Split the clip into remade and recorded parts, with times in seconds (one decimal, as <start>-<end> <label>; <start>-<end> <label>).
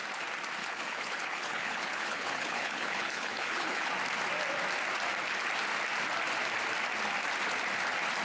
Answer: 0.0-0.6 recorded; 0.6-3.9 remade; 3.9-8.2 recorded